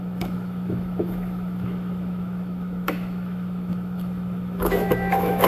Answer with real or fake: fake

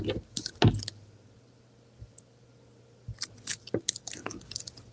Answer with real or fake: real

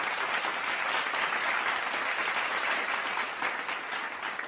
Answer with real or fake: real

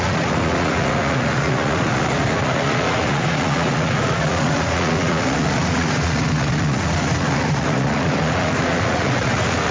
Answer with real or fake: fake